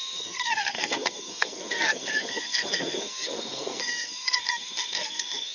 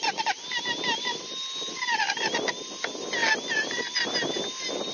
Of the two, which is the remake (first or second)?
first